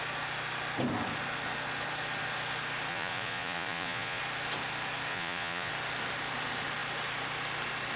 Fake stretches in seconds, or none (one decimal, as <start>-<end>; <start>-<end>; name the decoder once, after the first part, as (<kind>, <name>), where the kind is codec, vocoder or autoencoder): 2.9-4.2 (vocoder, Vocos); 5.1-5.7